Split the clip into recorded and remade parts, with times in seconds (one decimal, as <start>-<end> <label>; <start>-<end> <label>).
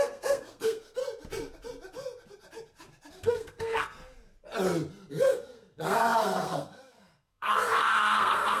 0.0-1.0 remade; 1.0-3.1 recorded; 3.1-4.0 remade; 4.0-5.1 recorded; 5.1-8.6 remade